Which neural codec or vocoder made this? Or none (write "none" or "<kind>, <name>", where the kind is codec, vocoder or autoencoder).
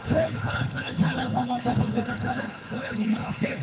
codec, HILCodec